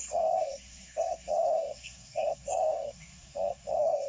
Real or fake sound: fake